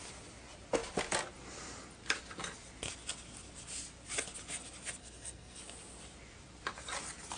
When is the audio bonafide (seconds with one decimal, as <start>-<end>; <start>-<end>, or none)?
0.0-5.0; 5.6-7.4